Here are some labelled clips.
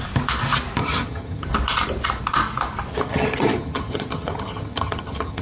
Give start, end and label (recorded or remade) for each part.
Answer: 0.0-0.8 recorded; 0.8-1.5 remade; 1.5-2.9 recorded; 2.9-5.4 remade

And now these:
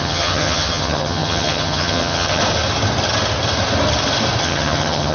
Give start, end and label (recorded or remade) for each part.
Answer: 0.0-2.4 remade; 2.4-4.4 recorded; 4.4-5.1 remade

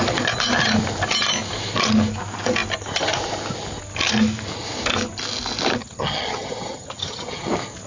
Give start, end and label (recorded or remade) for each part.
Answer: 0.0-5.8 recorded; 5.8-7.5 remade; 7.5-7.9 recorded

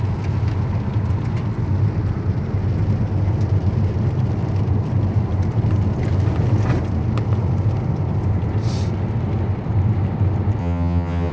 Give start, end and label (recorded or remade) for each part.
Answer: 0.0-10.6 recorded; 10.6-11.3 remade